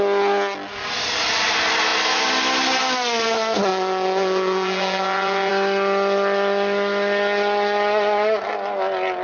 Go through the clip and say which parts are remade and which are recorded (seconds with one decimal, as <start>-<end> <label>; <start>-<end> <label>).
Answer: 0.0-3.7 recorded; 3.7-5.5 remade; 5.5-9.2 recorded